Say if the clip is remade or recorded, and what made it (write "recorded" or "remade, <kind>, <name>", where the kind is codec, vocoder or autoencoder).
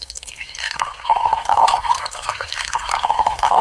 remade, codec, SNAC